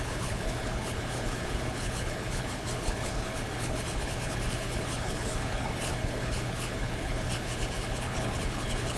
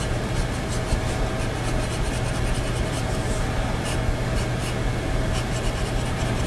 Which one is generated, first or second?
first